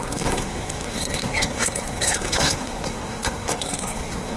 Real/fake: fake